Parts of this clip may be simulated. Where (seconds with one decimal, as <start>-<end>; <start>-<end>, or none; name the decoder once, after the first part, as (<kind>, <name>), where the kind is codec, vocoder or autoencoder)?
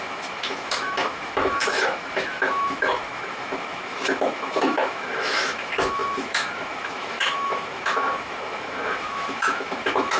0.0-10.2 (autoencoder, DAC-VAE)